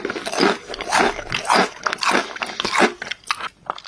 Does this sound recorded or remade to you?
recorded